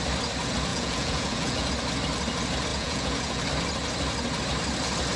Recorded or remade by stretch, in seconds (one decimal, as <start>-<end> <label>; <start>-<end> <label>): 0.0-0.7 recorded; 0.7-1.7 remade; 1.7-2.7 recorded; 2.7-3.4 remade; 3.4-5.2 recorded